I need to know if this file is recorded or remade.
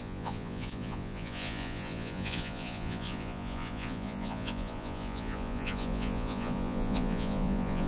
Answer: remade